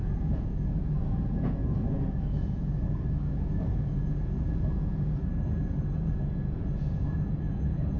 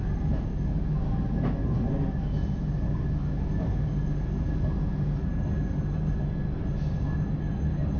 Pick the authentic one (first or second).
second